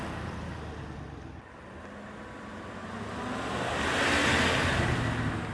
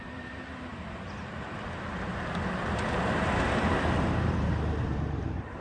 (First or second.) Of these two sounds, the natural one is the first